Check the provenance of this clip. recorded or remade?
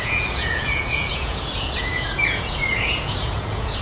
remade